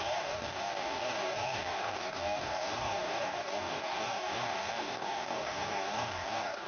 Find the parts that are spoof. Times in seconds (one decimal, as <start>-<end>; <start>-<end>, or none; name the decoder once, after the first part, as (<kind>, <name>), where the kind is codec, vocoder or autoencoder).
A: 0.0-6.7 (codec, DAC)